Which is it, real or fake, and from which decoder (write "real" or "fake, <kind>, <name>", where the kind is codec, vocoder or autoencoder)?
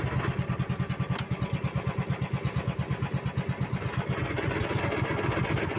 real